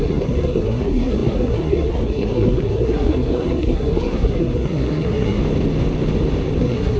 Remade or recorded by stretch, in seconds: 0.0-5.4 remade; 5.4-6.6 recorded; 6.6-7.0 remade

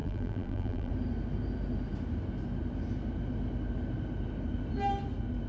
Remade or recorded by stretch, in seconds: 0.0-0.9 remade; 0.9-5.5 recorded

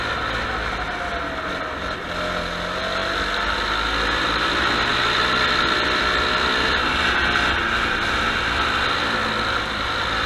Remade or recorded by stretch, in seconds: 0.0-10.3 recorded

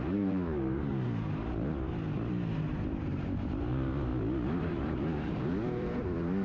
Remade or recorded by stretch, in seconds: 0.0-0.9 remade; 0.9-2.7 recorded; 2.7-4.1 remade; 4.1-4.6 recorded; 4.6-6.4 remade